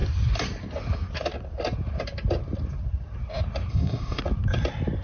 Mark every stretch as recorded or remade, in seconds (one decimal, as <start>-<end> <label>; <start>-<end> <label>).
0.0-3.7 recorded; 3.7-4.2 remade; 4.2-5.0 recorded